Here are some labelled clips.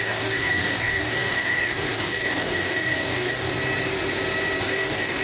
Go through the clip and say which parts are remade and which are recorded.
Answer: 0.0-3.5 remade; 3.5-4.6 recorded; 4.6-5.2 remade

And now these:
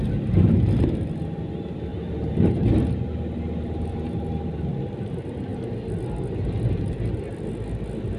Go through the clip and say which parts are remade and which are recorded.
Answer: 0.0-8.2 recorded

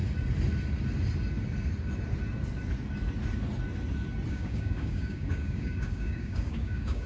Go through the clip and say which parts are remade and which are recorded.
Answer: 0.0-4.3 recorded; 4.3-7.1 remade

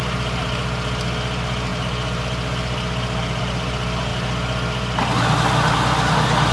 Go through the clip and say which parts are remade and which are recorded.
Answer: 0.0-6.5 recorded